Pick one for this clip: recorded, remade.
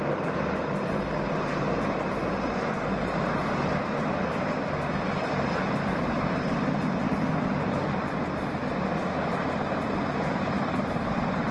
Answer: recorded